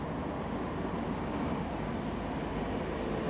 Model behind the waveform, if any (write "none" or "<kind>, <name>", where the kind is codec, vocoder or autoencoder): none